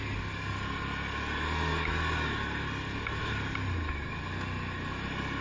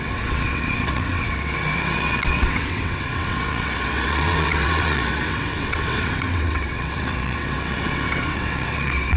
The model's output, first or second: second